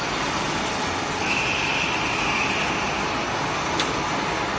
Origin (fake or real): real